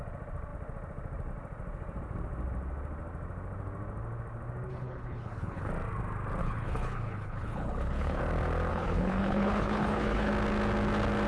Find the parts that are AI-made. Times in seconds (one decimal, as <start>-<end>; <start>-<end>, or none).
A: 4.7-5.7; 6.4-8.2; 8.7-10.3